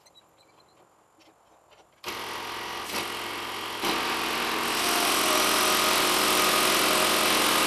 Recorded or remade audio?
recorded